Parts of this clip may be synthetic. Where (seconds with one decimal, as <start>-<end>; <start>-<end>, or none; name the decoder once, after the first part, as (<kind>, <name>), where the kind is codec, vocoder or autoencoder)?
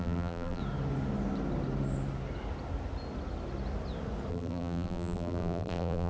0.0-0.6 (vocoder, BigVGAN v2); 4.3-6.1